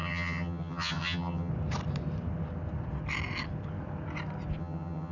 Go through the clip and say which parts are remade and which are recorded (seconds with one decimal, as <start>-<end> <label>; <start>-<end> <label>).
0.0-1.5 remade; 1.5-4.6 recorded; 4.6-5.1 remade

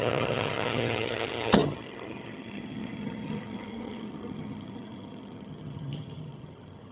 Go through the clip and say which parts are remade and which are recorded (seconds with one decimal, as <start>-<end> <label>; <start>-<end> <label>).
0.0-6.9 remade

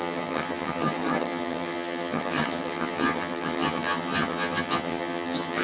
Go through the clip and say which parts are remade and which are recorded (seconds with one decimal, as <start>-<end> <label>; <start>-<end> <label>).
0.0-5.6 remade

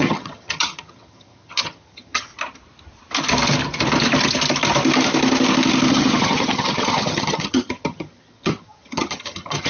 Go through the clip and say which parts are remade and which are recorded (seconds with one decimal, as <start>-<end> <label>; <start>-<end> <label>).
0.0-2.3 remade; 2.3-5.9 recorded; 5.9-9.7 remade

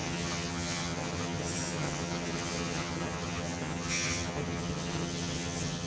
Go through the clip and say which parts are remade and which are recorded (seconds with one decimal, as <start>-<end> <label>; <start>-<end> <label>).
0.0-5.9 remade

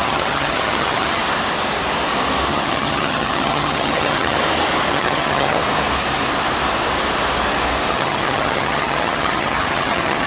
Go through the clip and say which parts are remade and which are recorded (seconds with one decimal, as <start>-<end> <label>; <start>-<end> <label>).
0.0-1.2 remade; 1.2-2.5 recorded; 2.5-4.4 remade; 4.4-4.9 recorded; 4.9-5.6 remade; 5.6-7.9 recorded; 7.9-10.3 remade